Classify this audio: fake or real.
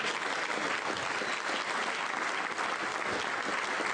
real